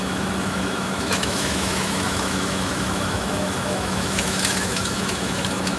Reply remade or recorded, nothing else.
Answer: remade